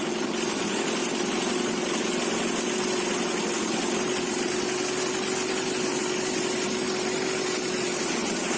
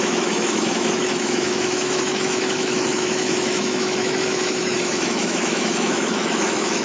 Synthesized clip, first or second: second